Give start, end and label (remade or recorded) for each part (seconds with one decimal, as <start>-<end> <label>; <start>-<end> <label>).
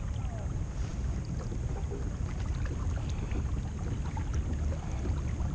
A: 0.0-5.5 recorded